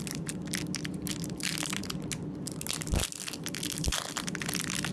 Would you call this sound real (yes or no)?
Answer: yes